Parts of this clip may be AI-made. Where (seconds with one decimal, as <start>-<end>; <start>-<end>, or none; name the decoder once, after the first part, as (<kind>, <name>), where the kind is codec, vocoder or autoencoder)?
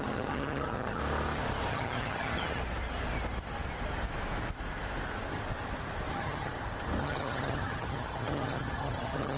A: 0.0-1.0 (vocoder, HiFi-GAN); 1.7-2.6; 6.1-6.5; 7.0-9.4